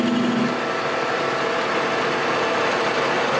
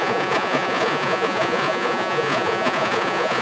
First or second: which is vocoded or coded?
second